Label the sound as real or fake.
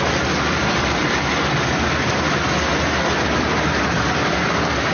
real